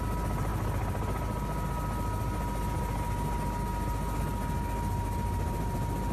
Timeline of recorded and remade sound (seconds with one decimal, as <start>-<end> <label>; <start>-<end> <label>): 0.0-6.1 recorded